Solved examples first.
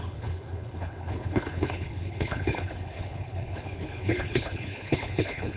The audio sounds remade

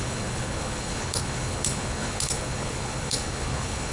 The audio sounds remade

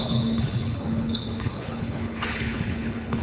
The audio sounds remade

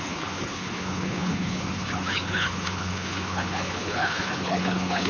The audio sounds remade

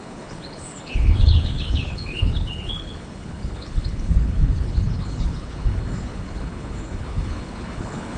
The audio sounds remade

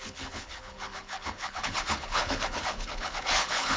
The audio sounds remade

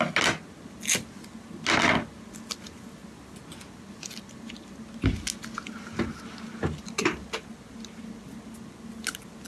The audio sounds recorded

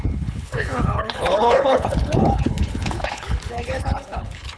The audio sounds remade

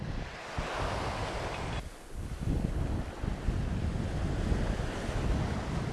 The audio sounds recorded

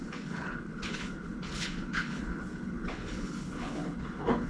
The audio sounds remade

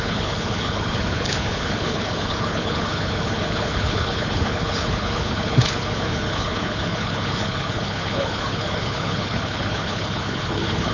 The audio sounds remade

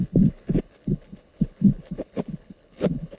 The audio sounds remade